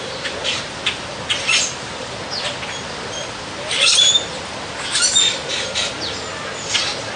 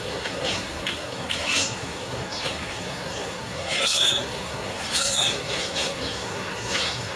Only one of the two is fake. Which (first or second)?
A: second